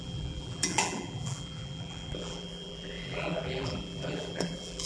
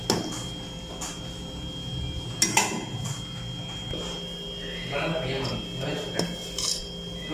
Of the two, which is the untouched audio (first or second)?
second